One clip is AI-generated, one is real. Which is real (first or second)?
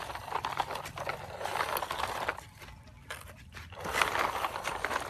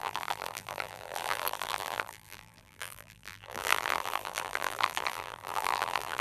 first